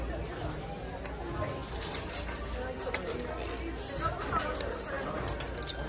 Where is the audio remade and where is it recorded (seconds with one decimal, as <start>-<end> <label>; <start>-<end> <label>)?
0.0-5.9 recorded